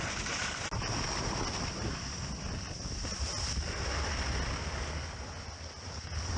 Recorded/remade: recorded